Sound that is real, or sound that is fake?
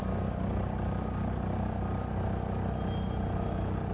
real